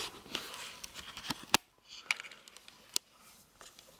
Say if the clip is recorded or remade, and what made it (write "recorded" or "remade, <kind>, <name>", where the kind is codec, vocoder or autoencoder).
recorded